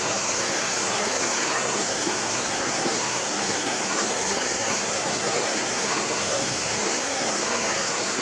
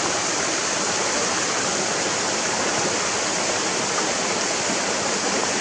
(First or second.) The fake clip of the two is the first